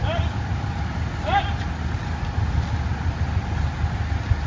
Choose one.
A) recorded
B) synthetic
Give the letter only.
A